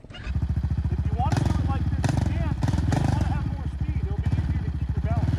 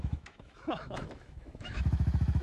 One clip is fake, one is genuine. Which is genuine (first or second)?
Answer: first